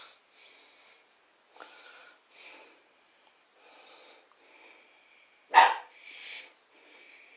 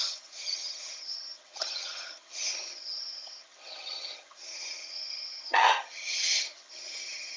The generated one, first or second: second